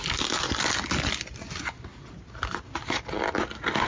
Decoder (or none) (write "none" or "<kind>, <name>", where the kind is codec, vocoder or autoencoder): none